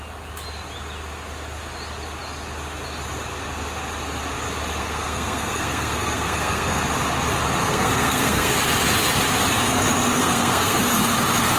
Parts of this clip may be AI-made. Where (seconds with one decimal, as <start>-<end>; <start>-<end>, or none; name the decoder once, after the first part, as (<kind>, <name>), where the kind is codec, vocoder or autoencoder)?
4.8-6.8 (codec, SNAC); 7.6-8.5; 10.2-10.8